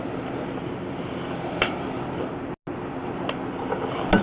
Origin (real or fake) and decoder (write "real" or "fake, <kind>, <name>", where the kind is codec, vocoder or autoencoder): real